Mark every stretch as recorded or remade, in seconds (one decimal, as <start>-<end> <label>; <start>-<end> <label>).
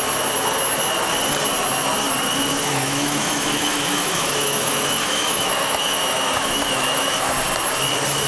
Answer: 0.0-2.5 recorded; 2.5-7.3 remade; 7.3-8.3 recorded